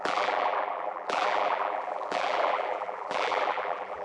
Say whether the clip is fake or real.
fake